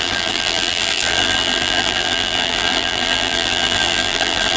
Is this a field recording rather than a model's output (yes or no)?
no